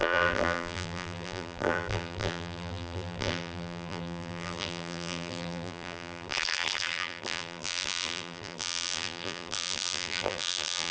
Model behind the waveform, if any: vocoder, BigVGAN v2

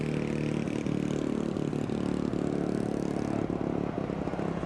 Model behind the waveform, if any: none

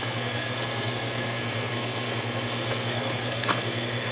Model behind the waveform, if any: codec, SNAC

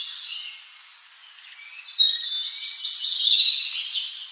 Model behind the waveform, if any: none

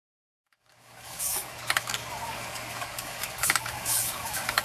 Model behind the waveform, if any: codec, DAC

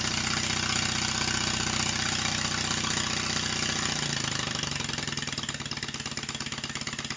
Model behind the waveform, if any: none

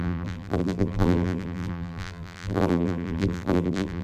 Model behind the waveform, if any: vocoder, BigVGAN v2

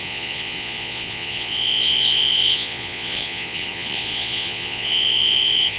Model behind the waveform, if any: vocoder, Vocos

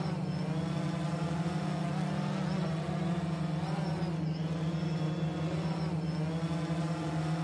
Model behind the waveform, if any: none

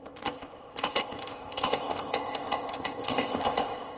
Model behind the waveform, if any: codec, ZipCodec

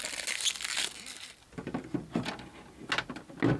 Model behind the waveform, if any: none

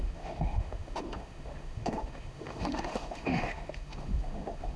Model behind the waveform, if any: autoencoder, DAC-VAE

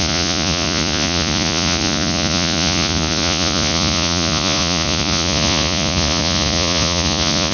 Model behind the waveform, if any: vocoder, Vocos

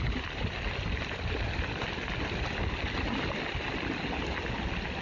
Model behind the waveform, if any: none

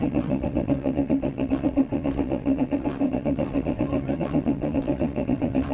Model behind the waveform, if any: vocoder, WaveNeXt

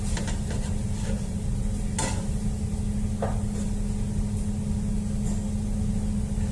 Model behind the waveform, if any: none